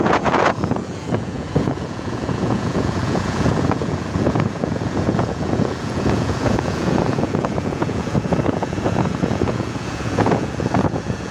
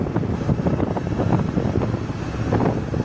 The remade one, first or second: first